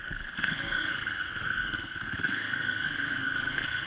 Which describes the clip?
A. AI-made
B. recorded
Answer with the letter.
A